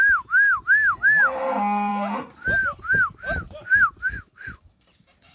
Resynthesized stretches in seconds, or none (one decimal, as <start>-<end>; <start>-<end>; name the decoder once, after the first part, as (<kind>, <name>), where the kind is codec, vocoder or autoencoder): none